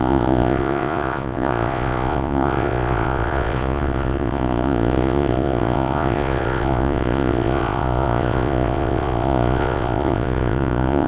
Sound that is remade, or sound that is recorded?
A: remade